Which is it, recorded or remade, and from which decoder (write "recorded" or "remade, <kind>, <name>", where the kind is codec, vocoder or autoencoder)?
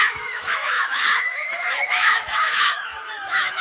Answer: remade, autoencoder, DAC-VAE